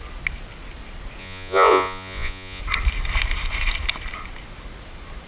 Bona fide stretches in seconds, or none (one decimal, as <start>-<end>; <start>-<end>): 0.0-1.2; 2.6-5.3